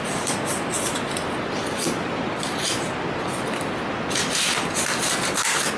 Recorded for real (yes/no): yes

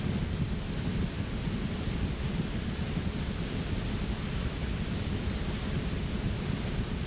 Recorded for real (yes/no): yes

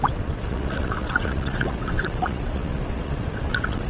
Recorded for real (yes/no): no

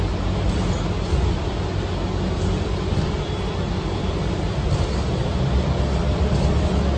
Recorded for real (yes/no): yes